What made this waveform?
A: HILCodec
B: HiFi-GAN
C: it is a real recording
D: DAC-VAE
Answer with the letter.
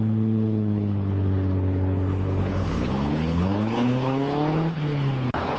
A